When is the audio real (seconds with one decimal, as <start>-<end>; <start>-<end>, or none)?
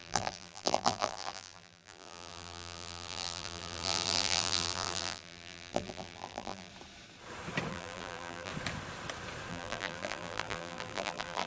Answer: 6.7-7.7; 8.5-9.5